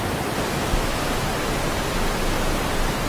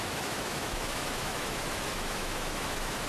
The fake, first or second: second